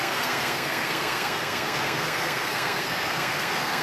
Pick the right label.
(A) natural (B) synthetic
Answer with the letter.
B